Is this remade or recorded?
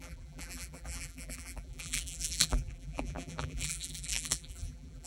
remade